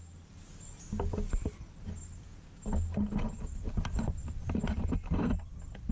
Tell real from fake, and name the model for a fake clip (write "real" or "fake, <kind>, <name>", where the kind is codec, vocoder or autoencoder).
real